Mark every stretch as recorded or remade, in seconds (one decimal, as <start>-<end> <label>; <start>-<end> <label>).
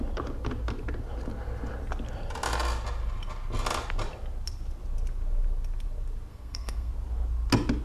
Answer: 0.0-6.3 recorded; 6.3-6.9 remade; 6.9-7.8 recorded